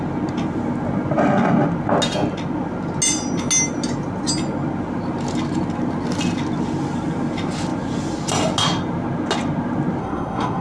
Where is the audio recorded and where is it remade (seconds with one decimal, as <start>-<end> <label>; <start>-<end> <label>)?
0.0-10.0 recorded; 10.0-10.6 remade